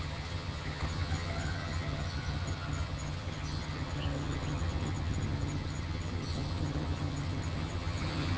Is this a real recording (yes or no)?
no